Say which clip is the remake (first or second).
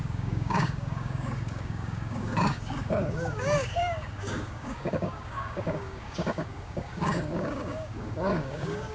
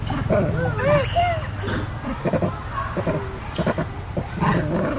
first